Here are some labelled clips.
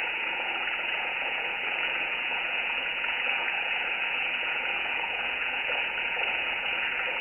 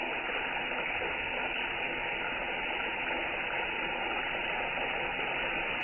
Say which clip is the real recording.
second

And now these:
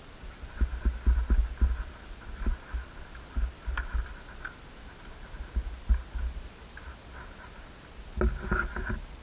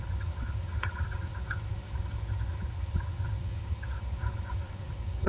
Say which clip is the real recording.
first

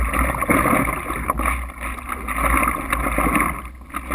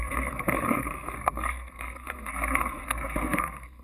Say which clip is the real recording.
first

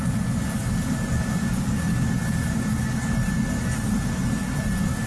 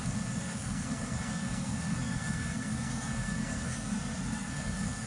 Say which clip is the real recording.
first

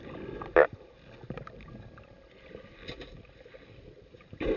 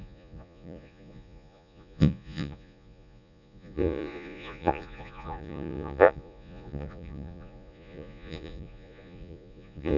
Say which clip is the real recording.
first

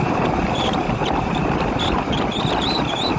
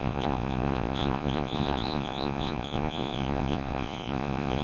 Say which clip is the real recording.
first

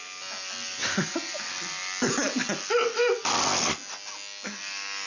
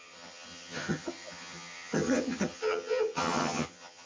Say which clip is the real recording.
first